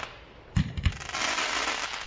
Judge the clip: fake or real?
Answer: real